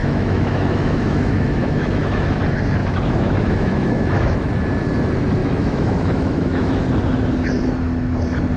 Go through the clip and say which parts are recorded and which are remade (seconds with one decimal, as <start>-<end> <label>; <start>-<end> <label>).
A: 0.0-2.4 remade; 2.4-2.8 recorded; 2.8-4.5 remade; 4.5-5.4 recorded; 5.4-6.8 remade; 6.8-8.6 recorded